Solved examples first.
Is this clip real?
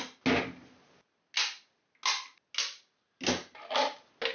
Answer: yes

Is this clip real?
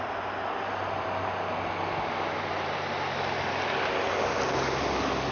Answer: yes